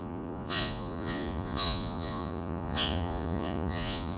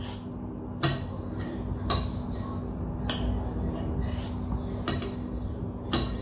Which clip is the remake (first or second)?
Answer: first